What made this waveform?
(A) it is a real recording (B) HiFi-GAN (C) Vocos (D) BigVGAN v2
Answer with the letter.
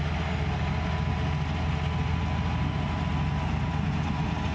A